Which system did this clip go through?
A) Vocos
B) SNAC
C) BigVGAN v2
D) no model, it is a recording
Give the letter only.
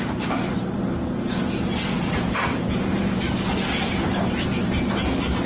D